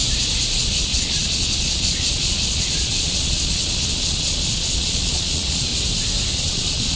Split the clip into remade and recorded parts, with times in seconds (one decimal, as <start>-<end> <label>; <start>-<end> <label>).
0.0-0.6 recorded; 0.6-5.7 remade; 5.7-6.3 recorded; 6.3-7.0 remade